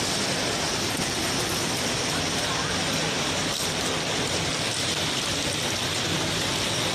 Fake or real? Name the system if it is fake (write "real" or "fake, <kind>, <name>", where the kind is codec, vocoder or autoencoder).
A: real